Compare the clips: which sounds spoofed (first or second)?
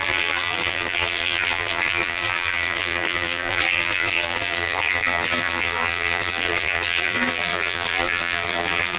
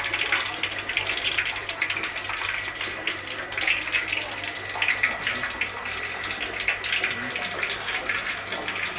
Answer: first